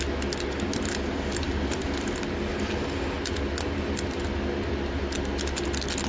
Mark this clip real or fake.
real